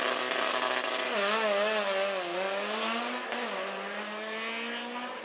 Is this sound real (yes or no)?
yes